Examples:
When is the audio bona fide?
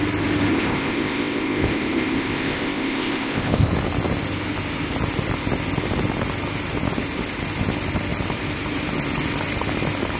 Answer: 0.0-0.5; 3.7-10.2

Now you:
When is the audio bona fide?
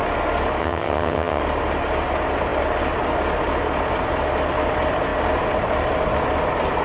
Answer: 0.0-0.6; 1.4-6.8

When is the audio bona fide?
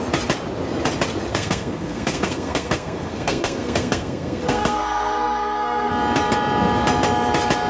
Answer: 0.0-1.3; 5.9-7.7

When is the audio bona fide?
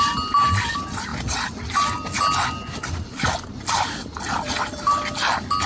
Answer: 0.0-5.7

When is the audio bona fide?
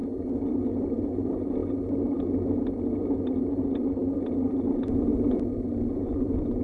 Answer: 0.0-0.7; 1.6-3.5; 4.0-4.5; 5.1-5.9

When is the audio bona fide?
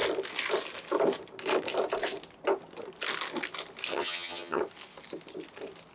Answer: 0.0-3.9; 4.6-5.9